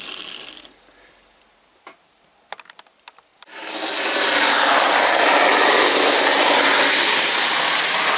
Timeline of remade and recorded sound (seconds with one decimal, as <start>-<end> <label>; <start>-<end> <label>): 0.0-8.2 recorded